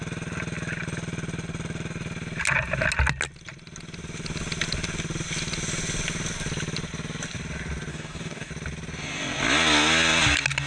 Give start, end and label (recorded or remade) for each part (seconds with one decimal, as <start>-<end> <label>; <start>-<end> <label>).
0.0-7.9 recorded; 7.9-8.5 remade; 8.5-10.7 recorded

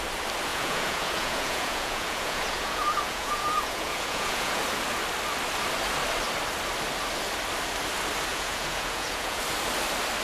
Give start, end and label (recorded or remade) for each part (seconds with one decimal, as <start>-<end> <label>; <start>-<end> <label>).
0.0-0.5 recorded; 0.5-4.6 remade; 4.6-8.3 recorded; 8.3-9.4 remade; 9.4-10.2 recorded